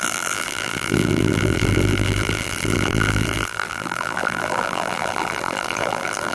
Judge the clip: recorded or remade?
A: remade